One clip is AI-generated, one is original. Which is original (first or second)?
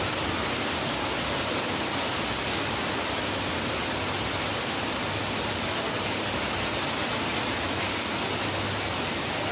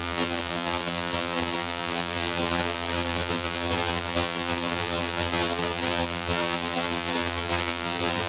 first